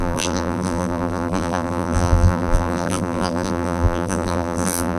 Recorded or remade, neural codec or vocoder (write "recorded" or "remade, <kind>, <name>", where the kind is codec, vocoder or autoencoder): remade, vocoder, BigVGAN v2